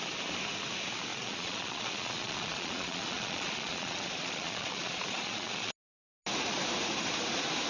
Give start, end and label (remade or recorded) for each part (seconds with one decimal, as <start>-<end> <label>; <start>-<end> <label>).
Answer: 0.0-1.1 recorded; 1.1-5.7 remade; 5.7-7.7 recorded